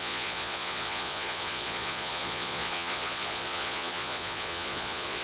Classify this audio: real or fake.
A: fake